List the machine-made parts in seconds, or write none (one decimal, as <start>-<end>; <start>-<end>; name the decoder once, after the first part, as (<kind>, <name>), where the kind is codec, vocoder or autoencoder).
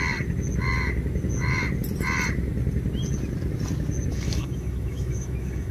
4.1-5.7 (autoencoder, DAC-VAE)